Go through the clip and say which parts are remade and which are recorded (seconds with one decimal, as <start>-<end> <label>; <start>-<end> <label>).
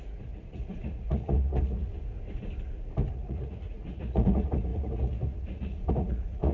0.0-1.9 remade; 1.9-3.1 recorded; 3.1-6.5 remade